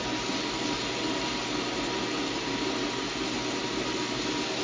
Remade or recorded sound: recorded